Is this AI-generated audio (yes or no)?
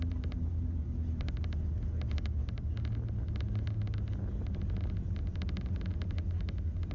no